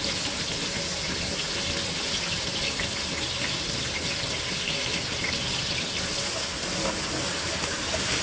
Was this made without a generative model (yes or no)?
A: yes